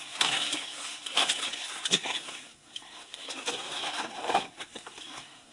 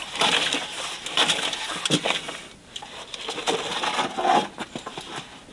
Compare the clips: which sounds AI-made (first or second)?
first